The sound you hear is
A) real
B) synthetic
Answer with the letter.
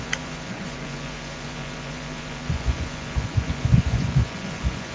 B